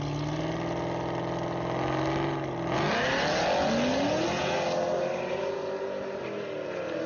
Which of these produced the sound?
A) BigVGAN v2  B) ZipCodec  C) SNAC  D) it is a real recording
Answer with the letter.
D